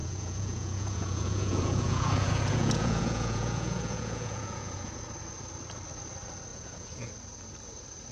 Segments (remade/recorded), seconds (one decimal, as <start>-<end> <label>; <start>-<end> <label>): 0.0-4.9 remade; 4.9-6.5 recorded; 6.5-7.1 remade; 7.1-8.1 recorded